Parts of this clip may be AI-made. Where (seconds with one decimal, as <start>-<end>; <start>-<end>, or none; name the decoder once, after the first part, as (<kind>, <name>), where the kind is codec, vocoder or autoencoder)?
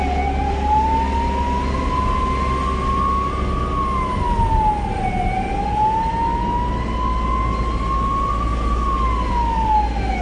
none